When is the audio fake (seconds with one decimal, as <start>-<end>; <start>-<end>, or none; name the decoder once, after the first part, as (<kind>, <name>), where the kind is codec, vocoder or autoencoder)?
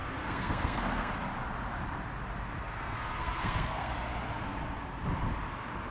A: 0.0-1.1 (codec, SNAC); 2.6-3.9